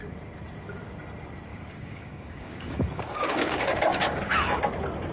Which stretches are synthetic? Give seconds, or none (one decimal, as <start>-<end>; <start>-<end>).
1.5-4.6